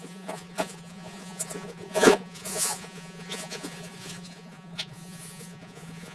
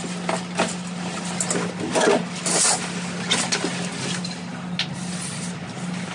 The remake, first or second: first